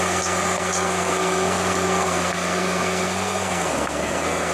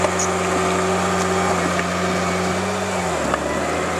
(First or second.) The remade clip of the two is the first